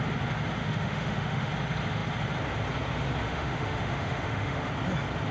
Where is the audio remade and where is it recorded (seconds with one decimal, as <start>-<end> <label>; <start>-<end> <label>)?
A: 0.0-0.6 recorded; 0.6-1.5 remade; 1.5-3.2 recorded; 3.2-4.7 remade; 4.7-5.3 recorded